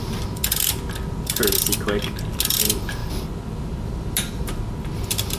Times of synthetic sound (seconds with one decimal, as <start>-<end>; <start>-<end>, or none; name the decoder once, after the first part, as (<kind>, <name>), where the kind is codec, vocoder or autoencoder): none